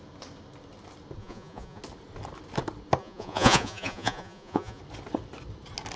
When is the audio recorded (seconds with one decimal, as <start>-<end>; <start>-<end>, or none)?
0.0-1.2; 1.8-3.0; 4.8-6.0